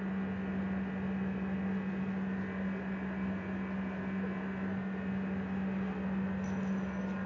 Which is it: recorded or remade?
recorded